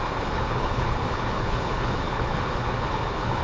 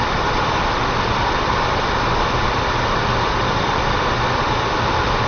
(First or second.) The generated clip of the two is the first